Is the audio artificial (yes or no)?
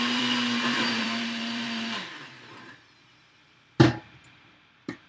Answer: yes